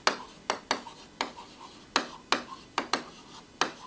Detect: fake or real real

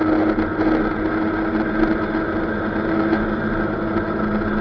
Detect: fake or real real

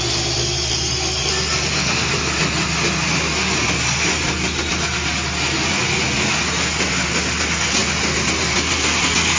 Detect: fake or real real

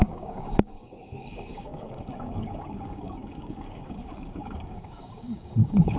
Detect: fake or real fake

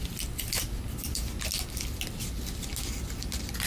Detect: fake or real real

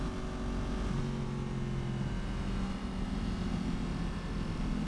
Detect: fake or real real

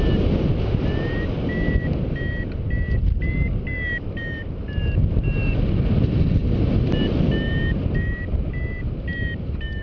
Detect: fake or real real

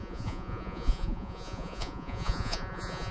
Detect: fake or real fake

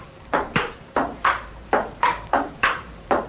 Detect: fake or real fake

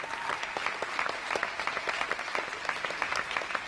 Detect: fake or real real